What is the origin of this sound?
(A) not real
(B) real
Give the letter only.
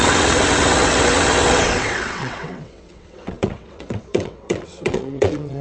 A